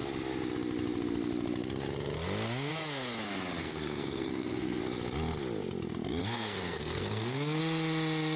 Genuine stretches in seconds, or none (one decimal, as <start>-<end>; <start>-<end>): 0.0-3.6; 4.8-6.2; 7.6-8.4